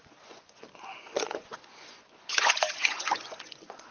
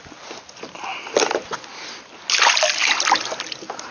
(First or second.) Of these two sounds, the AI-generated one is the first